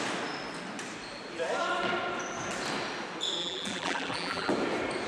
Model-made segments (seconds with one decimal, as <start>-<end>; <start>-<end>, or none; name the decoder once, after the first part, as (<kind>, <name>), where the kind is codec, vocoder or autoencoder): 3.4-4.5 (vocoder, BigVGAN v2)